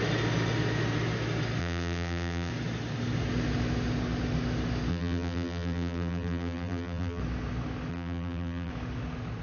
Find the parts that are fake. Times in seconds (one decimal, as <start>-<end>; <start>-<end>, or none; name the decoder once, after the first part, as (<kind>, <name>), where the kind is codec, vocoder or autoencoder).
1.6-2.5 (vocoder, BigVGAN v2); 4.9-7.2; 7.9-8.7

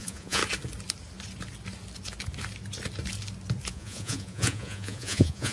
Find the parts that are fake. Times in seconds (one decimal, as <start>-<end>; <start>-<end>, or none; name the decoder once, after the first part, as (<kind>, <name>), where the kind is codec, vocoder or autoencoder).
0.0-0.4 (vocoder, Vocos); 3.7-5.5

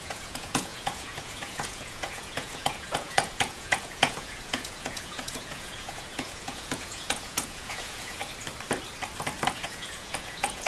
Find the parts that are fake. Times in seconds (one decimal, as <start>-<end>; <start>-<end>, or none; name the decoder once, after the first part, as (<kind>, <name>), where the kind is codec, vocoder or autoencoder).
0.0-8.2 (vocoder, Vocos); 9.5-10.7